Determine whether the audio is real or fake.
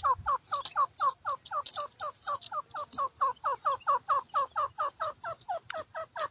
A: real